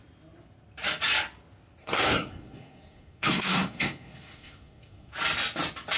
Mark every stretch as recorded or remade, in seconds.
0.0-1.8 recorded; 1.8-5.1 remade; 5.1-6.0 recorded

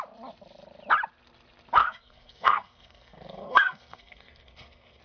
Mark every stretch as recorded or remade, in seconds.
0.0-1.8 recorded; 1.8-5.0 remade

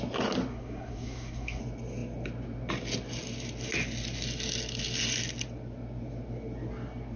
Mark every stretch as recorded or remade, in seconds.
0.0-0.5 recorded; 0.5-1.6 remade; 1.6-7.2 recorded

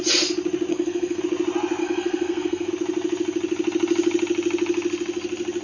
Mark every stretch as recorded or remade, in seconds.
0.0-0.7 recorded; 0.7-1.2 remade; 1.2-1.8 recorded; 1.8-2.7 remade; 2.7-5.6 recorded

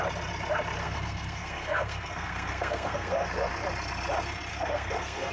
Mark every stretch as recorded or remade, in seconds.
0.0-0.8 recorded; 0.8-3.5 remade; 3.5-4.5 recorded; 4.5-5.3 remade